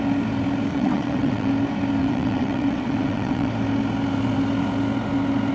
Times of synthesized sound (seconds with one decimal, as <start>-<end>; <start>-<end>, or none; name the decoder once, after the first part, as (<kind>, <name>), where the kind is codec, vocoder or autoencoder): 0.7-1.5 (vocoder, WaveNeXt); 2.0-3.5